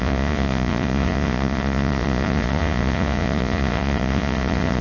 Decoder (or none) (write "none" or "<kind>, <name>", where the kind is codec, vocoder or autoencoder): vocoder, Vocos